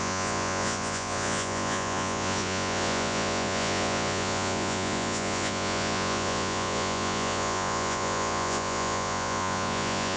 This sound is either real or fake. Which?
fake